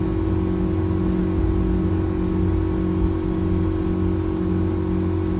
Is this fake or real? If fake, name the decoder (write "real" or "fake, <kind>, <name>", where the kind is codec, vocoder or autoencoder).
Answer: real